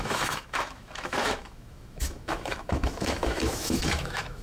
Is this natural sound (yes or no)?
no